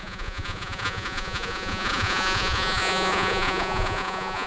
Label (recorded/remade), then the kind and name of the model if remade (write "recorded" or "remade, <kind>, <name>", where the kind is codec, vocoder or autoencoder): remade, vocoder, Vocos